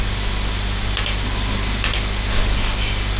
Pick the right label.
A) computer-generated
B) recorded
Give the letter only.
B